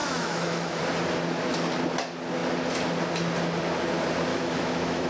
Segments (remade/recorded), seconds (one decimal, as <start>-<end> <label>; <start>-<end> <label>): 0.0-0.8 remade; 0.8-4.3 recorded; 4.3-5.1 remade